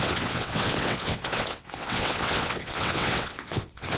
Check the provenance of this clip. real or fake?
fake